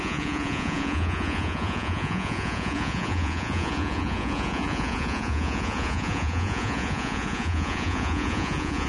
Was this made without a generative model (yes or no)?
no